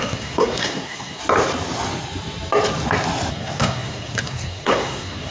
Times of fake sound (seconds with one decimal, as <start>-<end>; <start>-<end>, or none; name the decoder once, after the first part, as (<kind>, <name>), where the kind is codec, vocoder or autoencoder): 0.0-1.2 (codec, SNAC); 3.3-5.3